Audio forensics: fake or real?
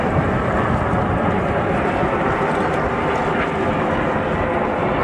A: real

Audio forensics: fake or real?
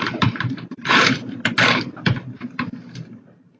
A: fake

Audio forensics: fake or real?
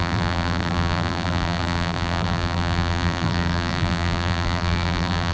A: fake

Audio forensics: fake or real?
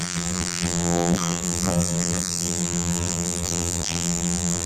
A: fake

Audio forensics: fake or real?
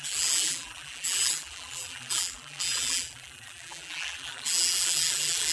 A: fake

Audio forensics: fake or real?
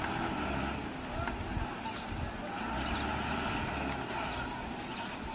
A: real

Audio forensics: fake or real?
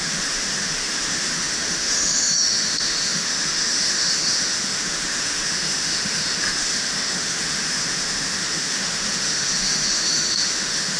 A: fake